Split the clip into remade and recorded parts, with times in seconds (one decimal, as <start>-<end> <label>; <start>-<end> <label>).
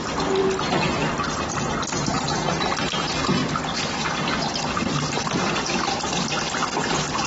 0.0-7.3 recorded